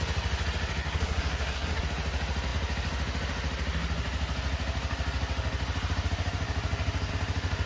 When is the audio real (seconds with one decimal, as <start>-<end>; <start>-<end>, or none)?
0.0-0.8; 1.8-7.7